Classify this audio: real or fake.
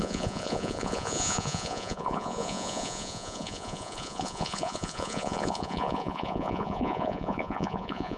fake